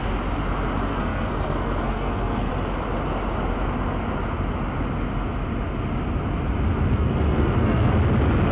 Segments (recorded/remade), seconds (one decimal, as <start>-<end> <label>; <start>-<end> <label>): 0.0-0.9 recorded; 0.9-2.5 remade; 2.5-6.9 recorded; 6.9-7.9 remade; 7.9-8.5 recorded